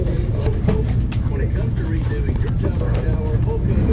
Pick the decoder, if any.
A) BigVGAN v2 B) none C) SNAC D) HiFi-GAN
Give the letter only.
B